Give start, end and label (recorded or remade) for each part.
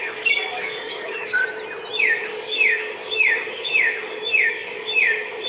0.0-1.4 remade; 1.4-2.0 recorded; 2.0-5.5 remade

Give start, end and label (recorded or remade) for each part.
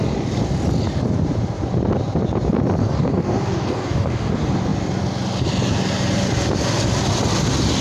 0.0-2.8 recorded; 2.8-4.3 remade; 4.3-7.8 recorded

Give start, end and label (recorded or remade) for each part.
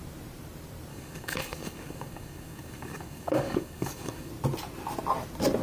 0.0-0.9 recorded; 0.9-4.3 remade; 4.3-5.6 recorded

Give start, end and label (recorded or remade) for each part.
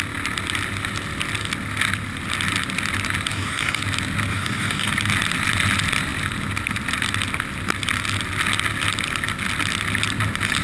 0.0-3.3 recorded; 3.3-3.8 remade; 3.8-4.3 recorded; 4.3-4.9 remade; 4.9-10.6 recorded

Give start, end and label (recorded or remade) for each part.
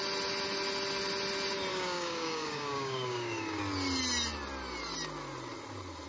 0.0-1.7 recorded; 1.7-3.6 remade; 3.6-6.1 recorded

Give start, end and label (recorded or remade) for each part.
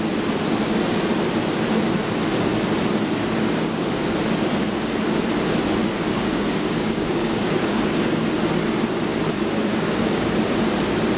0.0-3.2 recorded; 3.2-3.9 remade; 3.9-6.1 recorded; 6.1-7.8 remade; 7.8-9.7 recorded; 9.7-10.4 remade; 10.4-11.2 recorded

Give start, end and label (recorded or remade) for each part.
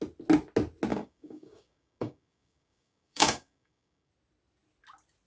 0.0-0.9 recorded; 0.9-4.1 remade; 4.1-5.3 recorded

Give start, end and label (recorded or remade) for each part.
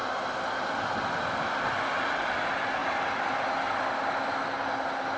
0.0-5.2 recorded